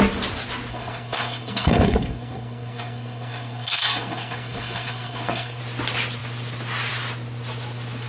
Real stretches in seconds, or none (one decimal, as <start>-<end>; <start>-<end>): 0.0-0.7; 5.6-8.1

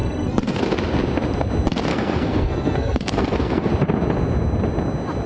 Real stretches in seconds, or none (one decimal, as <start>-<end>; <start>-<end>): 0.6-1.9; 3.7-5.3

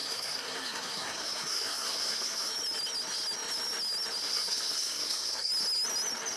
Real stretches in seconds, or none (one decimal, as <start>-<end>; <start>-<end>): 2.5-4.2; 5.5-6.4

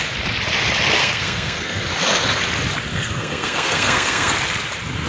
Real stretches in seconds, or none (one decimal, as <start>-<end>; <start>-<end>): 0.0-1.0; 1.8-2.9; 4.3-5.1

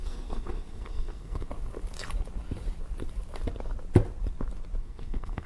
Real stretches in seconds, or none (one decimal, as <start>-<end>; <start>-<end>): 1.5-4.8